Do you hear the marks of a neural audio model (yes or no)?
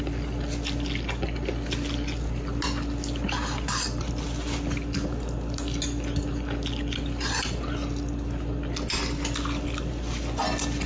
no